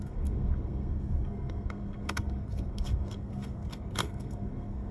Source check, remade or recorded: remade